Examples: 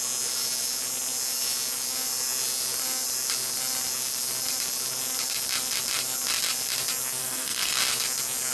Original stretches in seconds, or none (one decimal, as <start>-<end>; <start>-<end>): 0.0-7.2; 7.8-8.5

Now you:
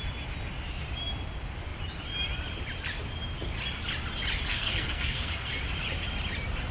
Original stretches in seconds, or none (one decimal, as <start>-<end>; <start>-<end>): 0.0-4.5; 5.5-6.7

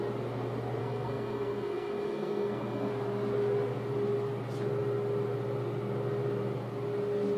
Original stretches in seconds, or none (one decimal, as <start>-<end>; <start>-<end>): 0.0-0.8; 2.9-7.4

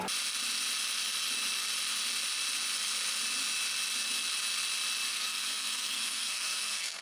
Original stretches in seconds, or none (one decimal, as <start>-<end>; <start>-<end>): 0.0-5.1

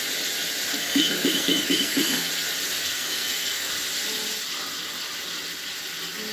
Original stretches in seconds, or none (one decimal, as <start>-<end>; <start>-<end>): 0.0-0.7; 2.3-2.8; 3.7-6.3

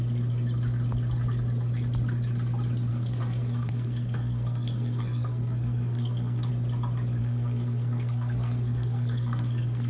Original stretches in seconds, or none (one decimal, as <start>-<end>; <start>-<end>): 0.0-2.9; 6.5-7.2